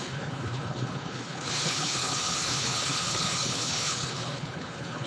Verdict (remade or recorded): remade